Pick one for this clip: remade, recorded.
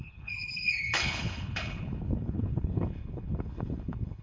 remade